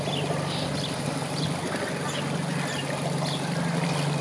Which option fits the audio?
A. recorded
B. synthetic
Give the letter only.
A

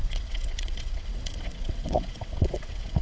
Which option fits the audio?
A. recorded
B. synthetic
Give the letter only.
B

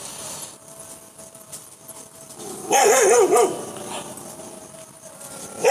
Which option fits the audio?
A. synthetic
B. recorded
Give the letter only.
A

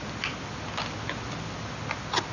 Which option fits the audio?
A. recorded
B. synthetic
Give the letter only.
A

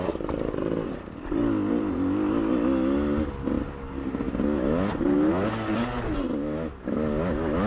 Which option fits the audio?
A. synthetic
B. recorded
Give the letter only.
B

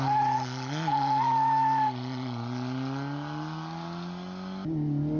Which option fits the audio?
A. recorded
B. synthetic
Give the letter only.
A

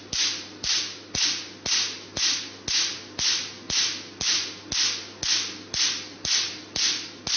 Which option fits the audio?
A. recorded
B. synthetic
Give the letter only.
A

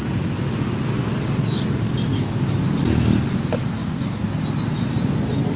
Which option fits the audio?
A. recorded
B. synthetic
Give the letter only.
A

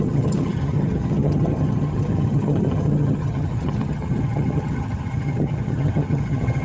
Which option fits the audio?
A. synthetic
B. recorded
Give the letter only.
A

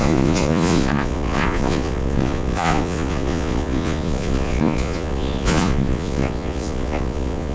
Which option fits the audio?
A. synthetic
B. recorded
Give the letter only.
A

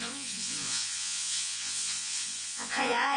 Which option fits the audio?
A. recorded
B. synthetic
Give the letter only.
B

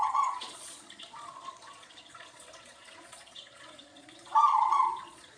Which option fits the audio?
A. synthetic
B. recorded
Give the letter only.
A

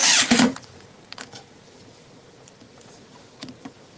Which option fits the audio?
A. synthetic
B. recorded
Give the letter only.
A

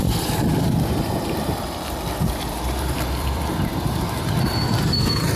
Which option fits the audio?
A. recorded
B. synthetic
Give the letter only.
B